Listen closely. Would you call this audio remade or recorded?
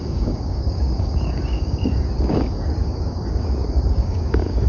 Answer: remade